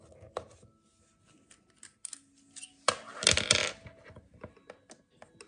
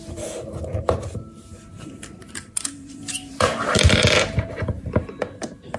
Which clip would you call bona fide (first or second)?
first